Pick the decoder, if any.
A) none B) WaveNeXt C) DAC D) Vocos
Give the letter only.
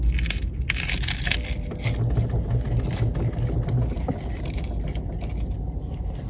A